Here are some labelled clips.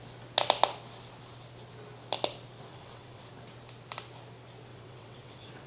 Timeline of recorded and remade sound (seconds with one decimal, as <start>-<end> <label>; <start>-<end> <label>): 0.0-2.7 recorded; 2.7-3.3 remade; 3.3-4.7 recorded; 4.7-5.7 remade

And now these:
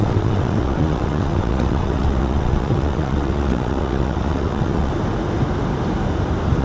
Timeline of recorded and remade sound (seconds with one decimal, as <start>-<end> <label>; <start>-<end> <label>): 0.0-4.9 remade; 4.9-6.6 recorded

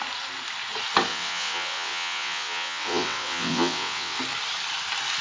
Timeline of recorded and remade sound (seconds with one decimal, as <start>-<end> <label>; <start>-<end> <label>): 0.0-1.1 recorded; 1.1-4.2 remade; 4.2-5.2 recorded

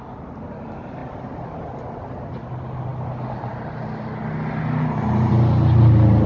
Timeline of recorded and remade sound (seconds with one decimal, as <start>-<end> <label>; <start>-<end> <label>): 0.0-6.3 recorded